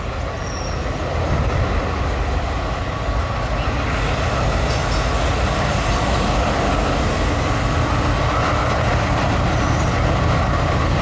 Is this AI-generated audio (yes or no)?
no